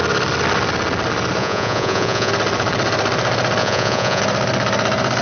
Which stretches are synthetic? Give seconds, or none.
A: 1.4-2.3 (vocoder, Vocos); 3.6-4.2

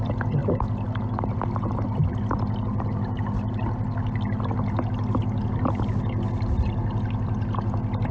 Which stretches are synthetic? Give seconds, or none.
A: none

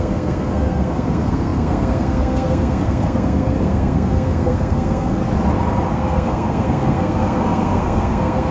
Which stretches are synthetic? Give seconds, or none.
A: 0.0-5.2 (codec, SNAC); 5.9-8.5